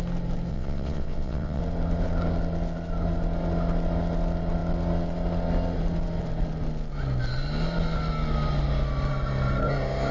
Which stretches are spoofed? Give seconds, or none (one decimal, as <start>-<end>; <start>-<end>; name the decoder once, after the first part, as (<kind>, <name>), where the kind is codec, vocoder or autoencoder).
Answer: 0.5-1.6 (vocoder, WaveNeXt)